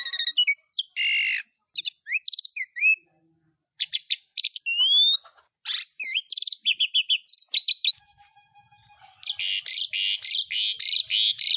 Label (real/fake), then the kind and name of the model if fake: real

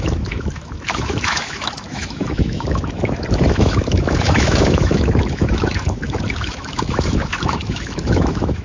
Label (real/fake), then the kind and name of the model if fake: fake, autoencoder, DAC-VAE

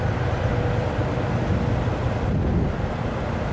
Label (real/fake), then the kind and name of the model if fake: real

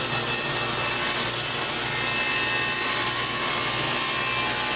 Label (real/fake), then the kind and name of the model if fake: real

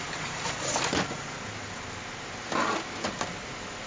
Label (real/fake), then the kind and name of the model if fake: real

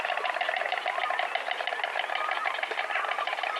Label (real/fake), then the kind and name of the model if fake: real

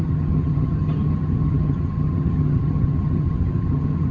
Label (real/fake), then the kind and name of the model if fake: fake, vocoder, HiFi-GAN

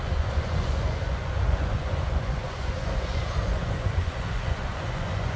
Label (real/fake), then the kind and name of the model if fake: fake, vocoder, Vocos